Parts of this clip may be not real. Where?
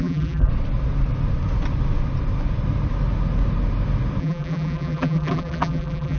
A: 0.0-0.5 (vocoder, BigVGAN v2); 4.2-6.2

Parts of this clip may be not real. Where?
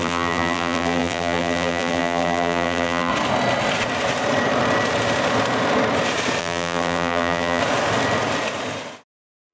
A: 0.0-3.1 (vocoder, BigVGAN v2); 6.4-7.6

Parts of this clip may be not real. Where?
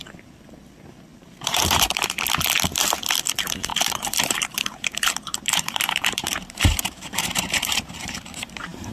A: 1.1-2.0 (vocoder, BigVGAN v2); 3.7-8.9